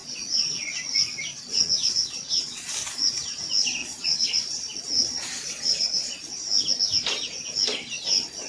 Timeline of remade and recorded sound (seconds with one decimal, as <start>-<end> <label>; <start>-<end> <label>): 0.0-0.6 remade; 0.6-1.6 recorded; 1.6-2.7 remade; 2.7-3.8 recorded; 3.8-6.3 remade; 6.3-8.5 recorded